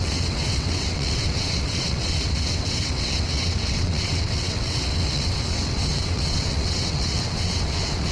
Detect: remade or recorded remade